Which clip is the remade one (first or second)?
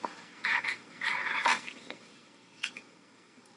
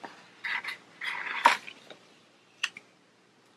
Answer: first